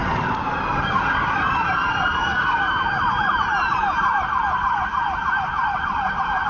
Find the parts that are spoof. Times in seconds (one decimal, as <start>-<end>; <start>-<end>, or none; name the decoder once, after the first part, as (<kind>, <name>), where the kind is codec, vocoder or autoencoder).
none

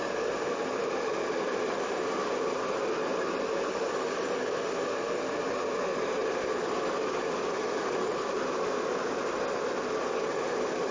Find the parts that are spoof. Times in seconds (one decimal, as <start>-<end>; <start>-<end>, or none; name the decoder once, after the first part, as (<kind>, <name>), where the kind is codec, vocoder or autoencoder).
none

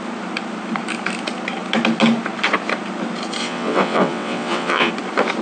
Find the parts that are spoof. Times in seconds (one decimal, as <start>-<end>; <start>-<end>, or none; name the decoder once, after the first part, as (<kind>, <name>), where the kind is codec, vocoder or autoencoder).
3.4-4.9 (vocoder, WaveNeXt)

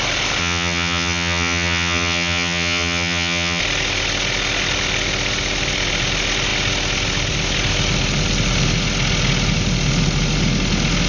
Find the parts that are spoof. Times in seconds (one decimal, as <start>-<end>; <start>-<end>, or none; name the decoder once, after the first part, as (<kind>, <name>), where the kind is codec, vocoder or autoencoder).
0.4-3.6 (vocoder, HiFi-GAN)

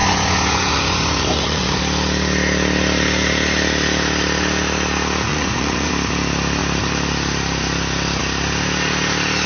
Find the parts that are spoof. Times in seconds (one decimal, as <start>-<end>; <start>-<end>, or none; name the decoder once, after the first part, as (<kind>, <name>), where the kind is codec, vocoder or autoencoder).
0.0-1.8 (vocoder, Vocos); 5.3-5.9

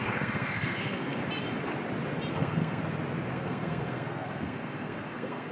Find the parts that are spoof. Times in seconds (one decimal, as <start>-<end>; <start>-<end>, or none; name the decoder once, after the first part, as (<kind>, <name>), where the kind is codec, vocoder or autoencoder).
0.0-1.2 (codec, SNAC); 2.3-2.8; 3.3-5.5